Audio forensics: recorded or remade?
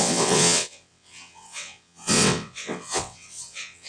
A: remade